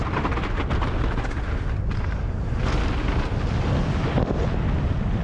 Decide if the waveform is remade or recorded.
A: recorded